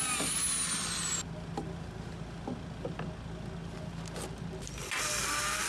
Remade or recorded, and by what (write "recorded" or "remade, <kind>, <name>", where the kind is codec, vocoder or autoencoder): recorded